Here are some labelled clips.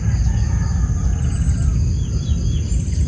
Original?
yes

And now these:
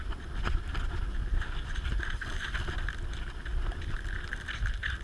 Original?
yes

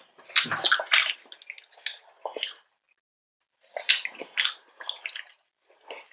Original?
yes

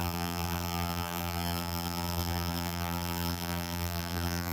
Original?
no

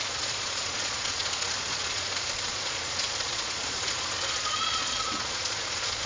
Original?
no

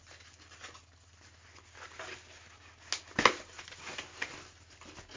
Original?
yes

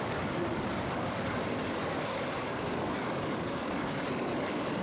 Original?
no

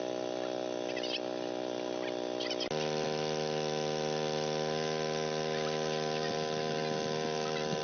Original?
yes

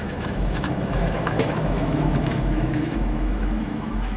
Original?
no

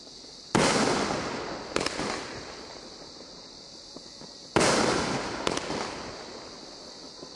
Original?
yes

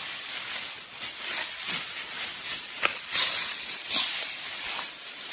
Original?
yes